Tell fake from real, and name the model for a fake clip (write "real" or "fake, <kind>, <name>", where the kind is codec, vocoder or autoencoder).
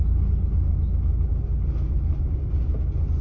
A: real